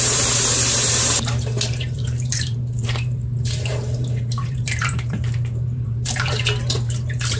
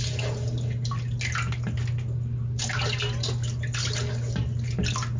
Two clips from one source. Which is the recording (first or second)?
second